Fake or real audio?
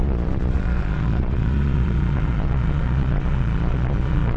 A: fake